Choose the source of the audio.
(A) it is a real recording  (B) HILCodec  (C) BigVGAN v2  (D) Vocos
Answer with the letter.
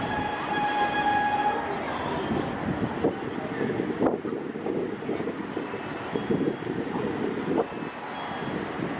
A